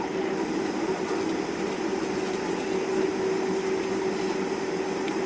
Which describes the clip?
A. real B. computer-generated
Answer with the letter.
A